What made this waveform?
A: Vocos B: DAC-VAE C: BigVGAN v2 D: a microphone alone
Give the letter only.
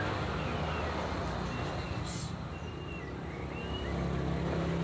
D